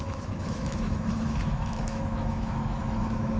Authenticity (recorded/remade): remade